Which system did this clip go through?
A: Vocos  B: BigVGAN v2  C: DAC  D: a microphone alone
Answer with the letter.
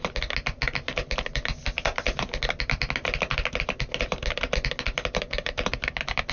D